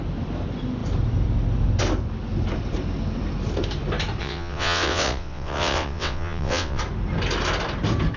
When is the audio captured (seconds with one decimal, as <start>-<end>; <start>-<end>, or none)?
0.0-4.2; 6.8-8.2